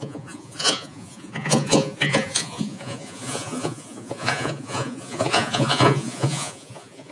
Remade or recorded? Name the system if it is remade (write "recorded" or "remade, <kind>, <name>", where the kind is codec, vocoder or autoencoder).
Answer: remade, vocoder, Vocos